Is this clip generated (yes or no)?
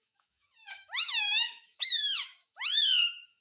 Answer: yes